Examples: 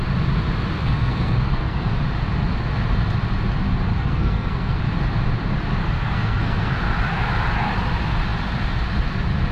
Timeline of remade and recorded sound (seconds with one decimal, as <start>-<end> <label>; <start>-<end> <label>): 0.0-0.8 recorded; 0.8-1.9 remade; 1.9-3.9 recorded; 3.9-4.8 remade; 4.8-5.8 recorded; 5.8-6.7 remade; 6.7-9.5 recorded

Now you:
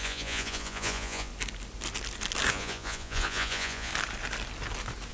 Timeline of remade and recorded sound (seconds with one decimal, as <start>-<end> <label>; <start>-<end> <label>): 0.0-1.3 remade; 1.3-2.5 recorded; 2.5-3.9 remade; 3.9-5.1 recorded

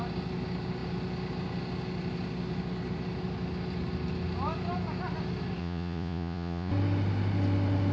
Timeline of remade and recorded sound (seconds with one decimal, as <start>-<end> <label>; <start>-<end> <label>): 0.0-5.6 recorded; 5.6-6.7 remade; 6.7-7.9 recorded

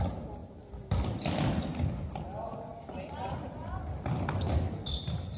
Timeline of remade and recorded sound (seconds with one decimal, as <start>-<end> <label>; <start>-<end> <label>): 0.0-5.4 recorded